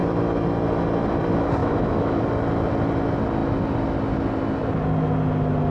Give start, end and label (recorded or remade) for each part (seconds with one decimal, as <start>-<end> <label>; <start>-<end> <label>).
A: 0.0-1.6 recorded; 1.6-2.2 remade; 2.2-5.7 recorded